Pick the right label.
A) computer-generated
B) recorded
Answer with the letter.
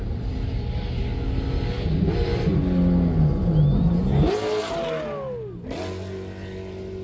B